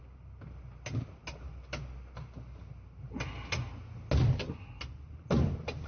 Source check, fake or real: real